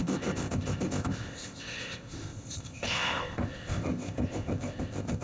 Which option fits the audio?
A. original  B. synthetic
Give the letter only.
B